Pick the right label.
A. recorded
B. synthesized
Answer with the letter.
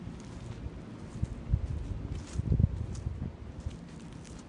A